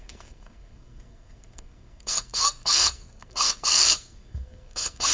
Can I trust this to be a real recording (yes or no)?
no